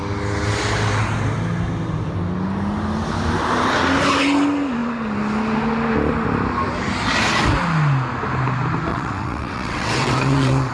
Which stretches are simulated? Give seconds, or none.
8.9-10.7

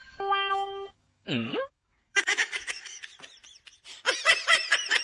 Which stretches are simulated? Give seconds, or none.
0.0-3.0

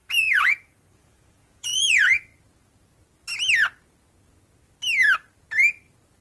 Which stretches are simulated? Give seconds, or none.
0.0-2.3

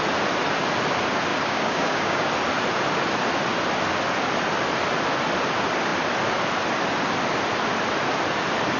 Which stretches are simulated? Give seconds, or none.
1.3-2.3

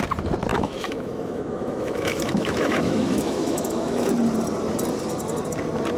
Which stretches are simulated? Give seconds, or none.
0.5-4.1